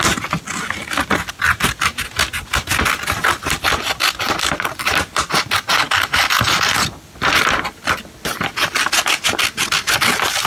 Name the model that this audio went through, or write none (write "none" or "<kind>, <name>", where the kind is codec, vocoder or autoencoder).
none